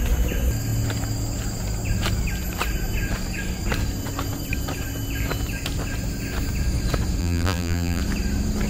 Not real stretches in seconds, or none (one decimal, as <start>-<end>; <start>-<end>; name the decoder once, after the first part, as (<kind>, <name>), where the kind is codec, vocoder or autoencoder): 7.2-8.0 (vocoder, BigVGAN v2)